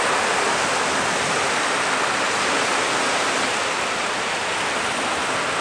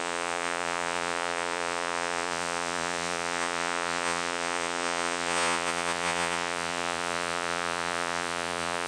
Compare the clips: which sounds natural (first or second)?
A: first